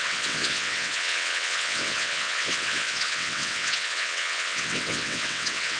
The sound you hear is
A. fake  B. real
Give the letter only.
A